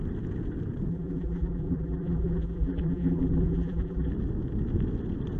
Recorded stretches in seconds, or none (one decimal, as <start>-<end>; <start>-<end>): 0.0-0.9; 4.1-5.4